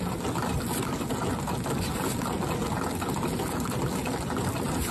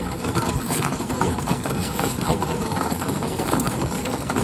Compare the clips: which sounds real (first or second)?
first